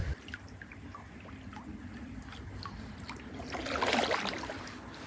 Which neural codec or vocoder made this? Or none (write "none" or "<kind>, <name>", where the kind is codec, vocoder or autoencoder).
none